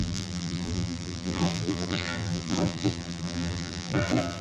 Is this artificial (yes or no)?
yes